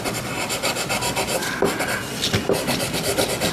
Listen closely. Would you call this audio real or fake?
real